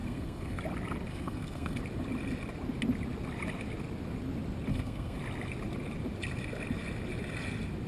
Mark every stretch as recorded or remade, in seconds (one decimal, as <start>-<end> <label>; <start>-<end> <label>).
0.0-0.6 remade; 0.6-1.1 recorded; 1.1-1.8 remade; 1.8-4.7 recorded; 4.7-5.2 remade; 5.2-7.9 recorded